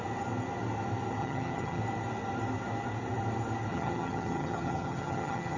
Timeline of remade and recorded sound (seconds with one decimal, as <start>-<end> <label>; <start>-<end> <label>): 0.0-1.2 recorded; 1.2-1.8 remade; 1.8-3.7 recorded; 3.7-5.6 remade